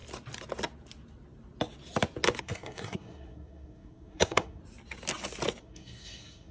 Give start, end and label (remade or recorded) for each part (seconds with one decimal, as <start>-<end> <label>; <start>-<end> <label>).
0.0-2.4 recorded; 2.4-4.6 remade; 4.6-5.6 recorded; 5.6-6.5 remade